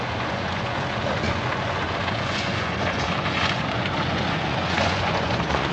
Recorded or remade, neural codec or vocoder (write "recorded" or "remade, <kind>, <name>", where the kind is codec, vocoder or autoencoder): remade, vocoder, Vocos